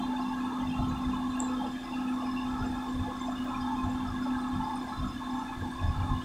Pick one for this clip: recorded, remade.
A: recorded